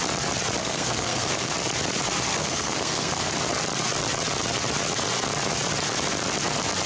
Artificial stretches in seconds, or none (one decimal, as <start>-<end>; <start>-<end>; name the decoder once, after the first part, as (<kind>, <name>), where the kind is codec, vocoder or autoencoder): 0.6-1.5 (codec, SNAC); 2.3-3.3